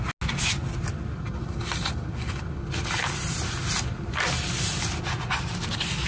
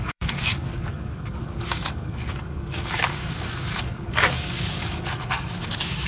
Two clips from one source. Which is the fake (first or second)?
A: second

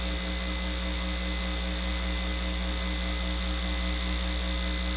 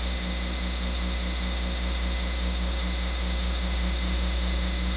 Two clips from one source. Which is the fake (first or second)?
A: second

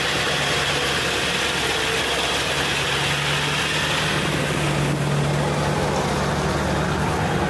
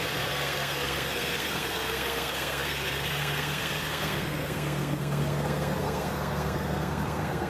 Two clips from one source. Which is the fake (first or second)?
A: second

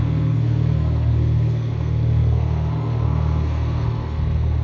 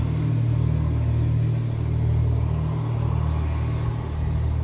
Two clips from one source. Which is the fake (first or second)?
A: first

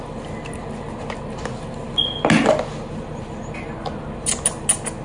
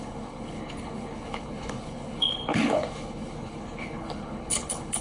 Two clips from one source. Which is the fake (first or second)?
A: second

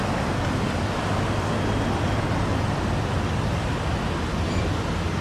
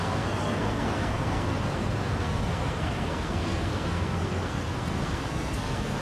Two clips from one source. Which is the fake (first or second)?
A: second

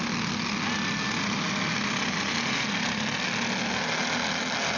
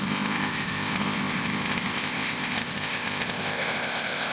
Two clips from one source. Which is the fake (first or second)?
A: second